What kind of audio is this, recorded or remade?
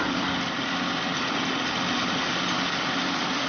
recorded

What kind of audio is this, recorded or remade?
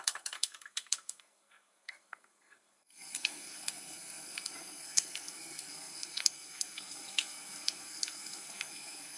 remade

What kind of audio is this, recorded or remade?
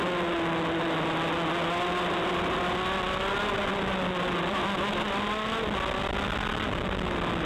recorded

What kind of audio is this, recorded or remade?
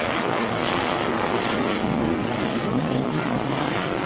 remade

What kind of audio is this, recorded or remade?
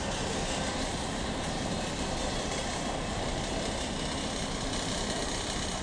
recorded